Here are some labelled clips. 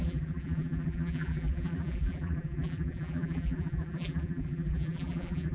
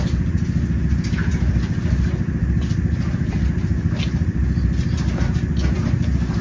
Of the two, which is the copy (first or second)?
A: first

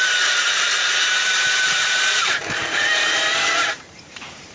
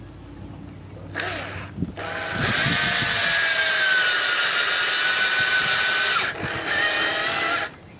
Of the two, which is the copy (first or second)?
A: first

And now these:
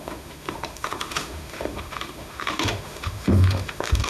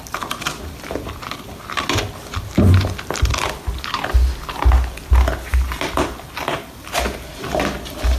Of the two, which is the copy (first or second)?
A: first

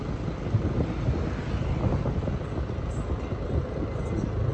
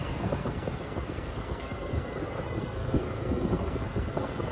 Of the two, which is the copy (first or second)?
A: second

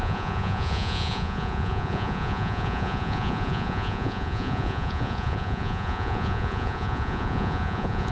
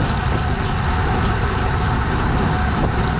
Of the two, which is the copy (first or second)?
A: first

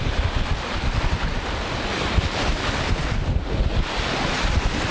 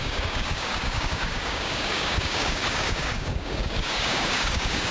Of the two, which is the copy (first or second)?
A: second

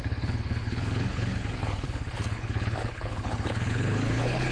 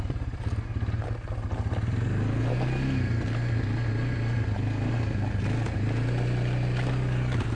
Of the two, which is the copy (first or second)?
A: first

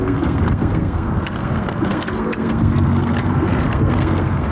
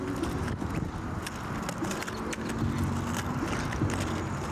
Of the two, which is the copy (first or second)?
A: first